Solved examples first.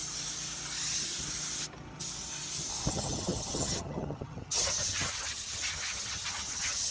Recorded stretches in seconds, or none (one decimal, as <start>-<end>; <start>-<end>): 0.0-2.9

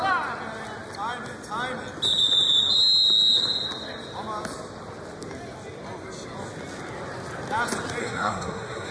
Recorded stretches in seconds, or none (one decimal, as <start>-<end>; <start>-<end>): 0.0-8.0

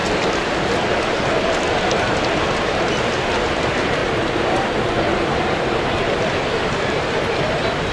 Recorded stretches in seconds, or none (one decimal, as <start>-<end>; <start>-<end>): 4.0-5.0

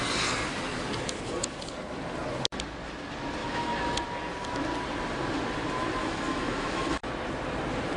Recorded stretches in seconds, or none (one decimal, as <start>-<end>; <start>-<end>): 0.0-3.4; 4.0-6.0; 7.1-8.0

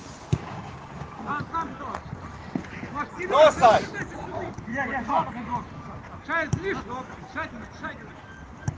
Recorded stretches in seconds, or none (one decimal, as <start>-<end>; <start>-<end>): 1.3-4.7; 5.3-8.8